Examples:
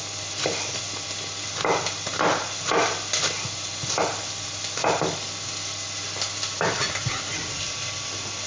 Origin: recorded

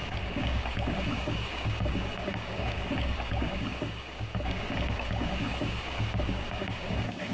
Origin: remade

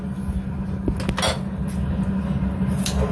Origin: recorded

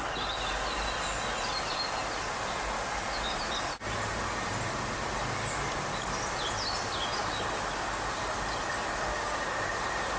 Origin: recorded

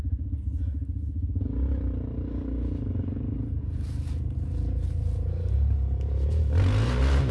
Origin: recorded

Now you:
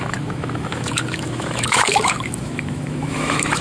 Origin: remade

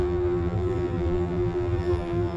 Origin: remade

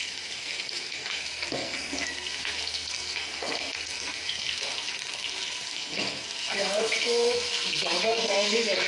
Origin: remade